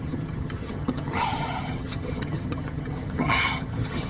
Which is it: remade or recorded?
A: remade